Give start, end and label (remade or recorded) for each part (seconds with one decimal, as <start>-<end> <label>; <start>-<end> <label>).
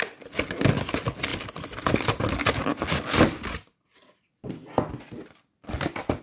0.0-6.2 recorded